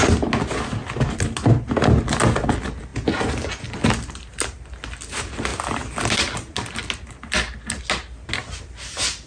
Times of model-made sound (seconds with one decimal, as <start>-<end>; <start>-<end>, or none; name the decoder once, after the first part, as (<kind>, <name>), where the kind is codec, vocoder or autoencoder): none